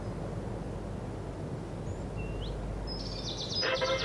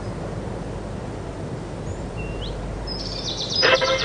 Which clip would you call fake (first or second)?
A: second